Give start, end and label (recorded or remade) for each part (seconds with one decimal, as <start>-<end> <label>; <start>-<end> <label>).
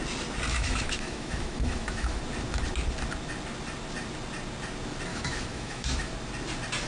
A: 0.0-0.5 recorded; 0.5-2.2 remade; 2.2-5.1 recorded; 5.1-6.1 remade; 6.1-6.9 recorded